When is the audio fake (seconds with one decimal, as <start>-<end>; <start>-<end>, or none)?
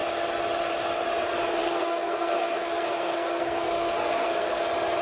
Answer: 1.6-4.6